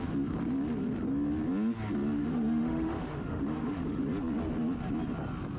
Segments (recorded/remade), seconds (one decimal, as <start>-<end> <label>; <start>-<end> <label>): 0.0-2.2 recorded; 2.2-4.0 remade; 4.0-5.6 recorded